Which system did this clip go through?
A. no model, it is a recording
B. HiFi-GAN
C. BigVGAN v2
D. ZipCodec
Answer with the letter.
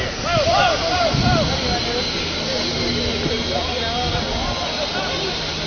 A